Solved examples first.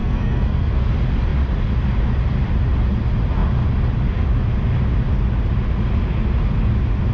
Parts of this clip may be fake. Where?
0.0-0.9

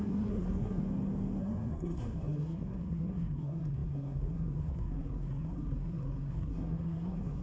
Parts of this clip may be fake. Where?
0.0-0.8; 1.4-7.4

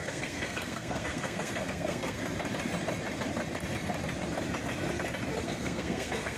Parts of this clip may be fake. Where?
0.0-2.2; 5.4-6.4